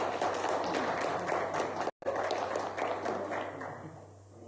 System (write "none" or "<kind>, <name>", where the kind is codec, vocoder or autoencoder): none